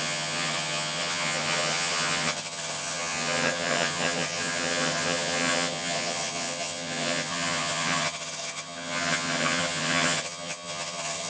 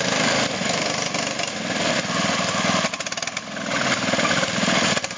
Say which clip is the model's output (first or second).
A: first